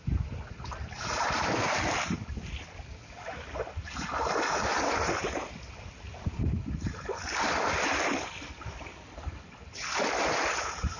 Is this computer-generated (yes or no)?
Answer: no